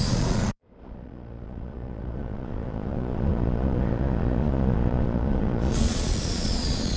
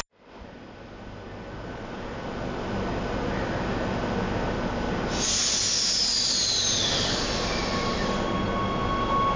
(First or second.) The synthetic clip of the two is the first